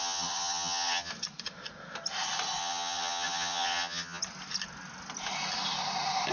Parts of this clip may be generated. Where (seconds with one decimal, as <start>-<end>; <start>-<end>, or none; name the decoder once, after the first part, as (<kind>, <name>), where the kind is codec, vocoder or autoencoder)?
0.0-1.1 (vocoder, HiFi-GAN); 2.6-4.2